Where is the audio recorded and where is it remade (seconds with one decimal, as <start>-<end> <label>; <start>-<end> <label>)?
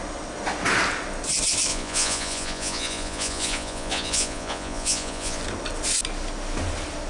0.0-1.7 recorded; 1.7-5.4 remade; 5.4-7.1 recorded